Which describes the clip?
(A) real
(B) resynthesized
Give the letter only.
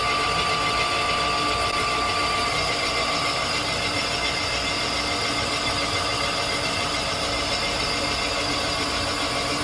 A